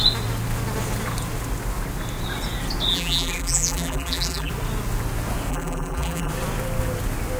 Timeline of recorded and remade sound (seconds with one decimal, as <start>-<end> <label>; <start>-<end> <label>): 0.0-2.9 recorded; 2.9-4.5 remade; 4.5-5.5 recorded; 5.5-6.3 remade; 6.3-7.4 recorded